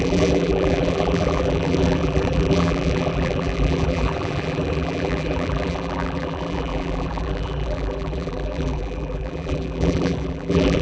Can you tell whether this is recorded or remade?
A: remade